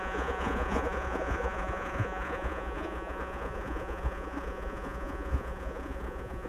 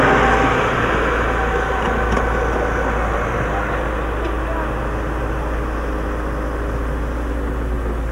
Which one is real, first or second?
second